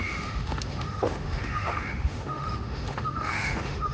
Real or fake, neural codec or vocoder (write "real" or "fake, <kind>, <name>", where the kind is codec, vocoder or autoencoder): fake, autoencoder, DAC-VAE